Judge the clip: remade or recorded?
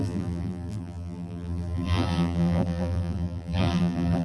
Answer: remade